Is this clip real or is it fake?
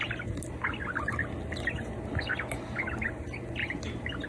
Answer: real